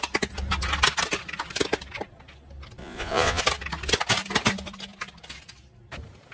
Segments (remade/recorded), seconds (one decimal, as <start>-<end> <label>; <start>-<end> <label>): 0.0-2.8 recorded; 2.8-3.4 remade; 3.4-6.3 recorded